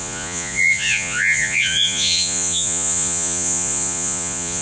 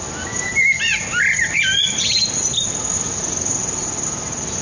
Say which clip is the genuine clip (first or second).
second